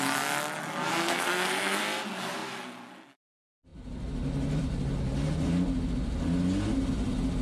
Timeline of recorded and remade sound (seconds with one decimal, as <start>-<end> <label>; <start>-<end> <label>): 0.0-0.9 recorded; 0.9-1.8 remade; 1.8-7.4 recorded